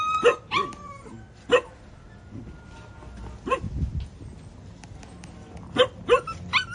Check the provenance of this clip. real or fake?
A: real